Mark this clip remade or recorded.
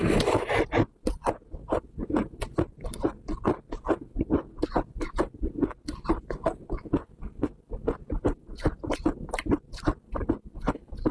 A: recorded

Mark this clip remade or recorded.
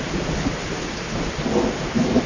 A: recorded